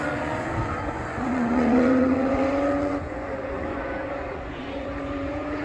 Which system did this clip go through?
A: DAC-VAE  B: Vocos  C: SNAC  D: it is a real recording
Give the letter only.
B